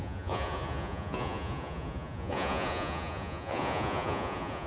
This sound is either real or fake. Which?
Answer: fake